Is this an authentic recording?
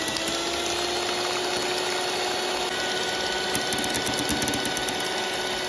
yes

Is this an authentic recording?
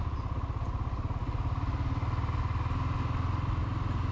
yes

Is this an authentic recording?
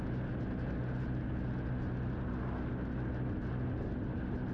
yes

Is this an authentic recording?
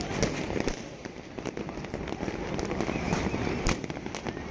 yes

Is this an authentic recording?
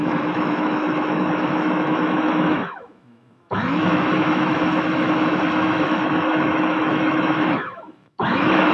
no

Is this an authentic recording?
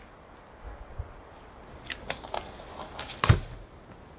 yes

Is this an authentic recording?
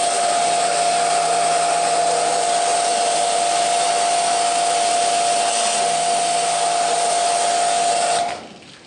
yes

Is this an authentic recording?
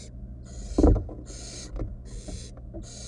yes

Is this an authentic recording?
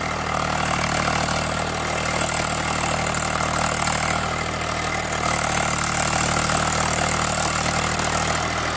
yes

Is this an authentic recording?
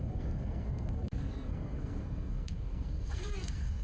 no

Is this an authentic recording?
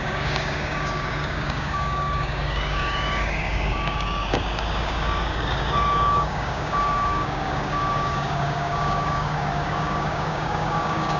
no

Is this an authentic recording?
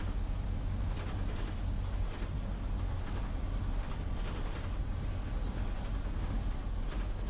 yes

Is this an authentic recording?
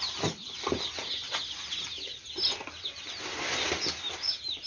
yes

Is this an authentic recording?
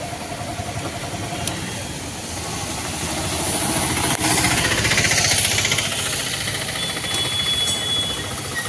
yes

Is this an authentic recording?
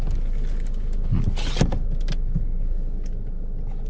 yes